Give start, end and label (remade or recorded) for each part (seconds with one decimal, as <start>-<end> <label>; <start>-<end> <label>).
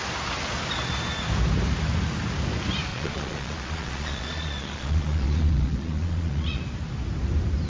0.0-2.9 recorded; 2.9-6.6 remade; 6.6-7.7 recorded